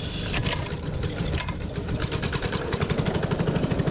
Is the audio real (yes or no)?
yes